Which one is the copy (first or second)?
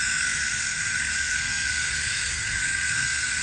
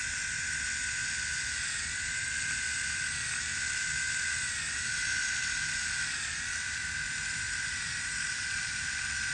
first